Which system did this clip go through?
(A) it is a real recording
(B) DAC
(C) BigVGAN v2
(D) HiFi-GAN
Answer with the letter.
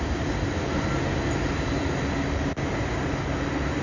A